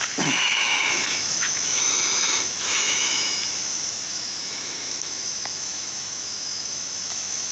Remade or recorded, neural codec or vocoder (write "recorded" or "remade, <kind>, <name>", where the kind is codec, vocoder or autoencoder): remade, autoencoder, DAC-VAE